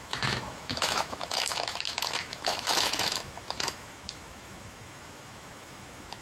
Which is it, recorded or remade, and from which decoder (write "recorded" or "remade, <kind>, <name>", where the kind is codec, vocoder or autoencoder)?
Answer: remade, autoencoder, DAC-VAE